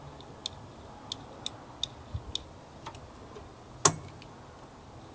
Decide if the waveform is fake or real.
real